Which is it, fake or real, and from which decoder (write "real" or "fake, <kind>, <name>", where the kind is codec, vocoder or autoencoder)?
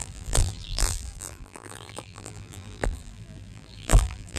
fake, vocoder, BigVGAN v2